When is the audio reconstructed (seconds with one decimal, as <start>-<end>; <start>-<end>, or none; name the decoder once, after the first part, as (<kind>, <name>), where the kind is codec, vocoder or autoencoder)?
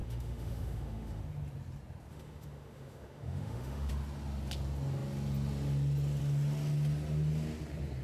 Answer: 0.0-1.2 (autoencoder, DAC-VAE); 2.1-3.9